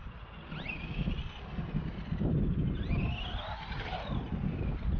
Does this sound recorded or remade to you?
recorded